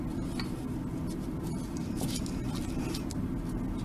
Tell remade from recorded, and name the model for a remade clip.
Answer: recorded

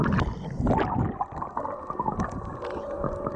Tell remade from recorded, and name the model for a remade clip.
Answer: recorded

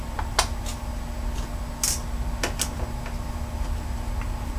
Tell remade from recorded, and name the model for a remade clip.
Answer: recorded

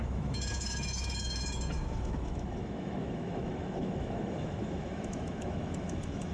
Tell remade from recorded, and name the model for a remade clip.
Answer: remade, autoencoder, DAC-VAE